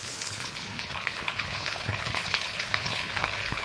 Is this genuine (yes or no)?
no